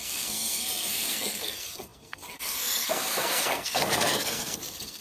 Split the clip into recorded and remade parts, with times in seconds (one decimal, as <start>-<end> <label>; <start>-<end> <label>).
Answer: 0.0-5.0 remade